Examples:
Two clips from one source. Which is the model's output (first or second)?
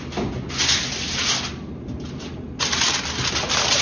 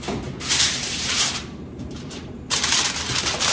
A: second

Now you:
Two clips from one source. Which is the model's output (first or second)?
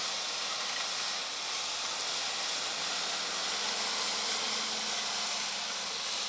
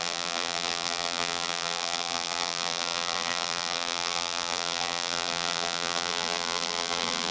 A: second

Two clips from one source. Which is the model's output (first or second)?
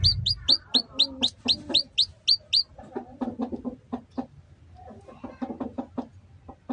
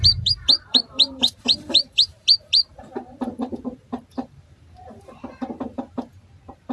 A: second